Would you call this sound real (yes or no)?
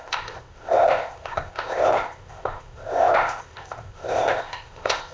no